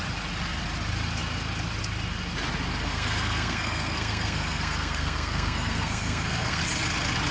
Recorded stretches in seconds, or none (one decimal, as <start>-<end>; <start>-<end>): 0.0-2.9; 6.6-7.3